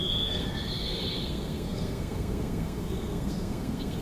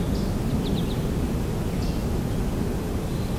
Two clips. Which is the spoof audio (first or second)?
first